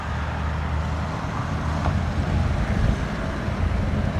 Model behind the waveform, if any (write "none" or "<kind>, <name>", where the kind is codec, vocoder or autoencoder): none